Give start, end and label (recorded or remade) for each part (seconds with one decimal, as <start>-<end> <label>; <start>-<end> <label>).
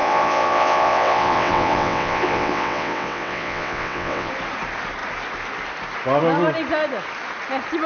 0.0-4.3 remade; 4.3-7.9 recorded